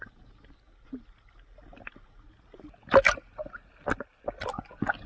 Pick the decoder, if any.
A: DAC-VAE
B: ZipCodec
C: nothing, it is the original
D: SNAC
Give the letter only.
C